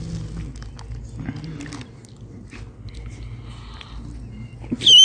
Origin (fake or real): real